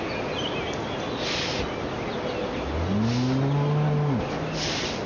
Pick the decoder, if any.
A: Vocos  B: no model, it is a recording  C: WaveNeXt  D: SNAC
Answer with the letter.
B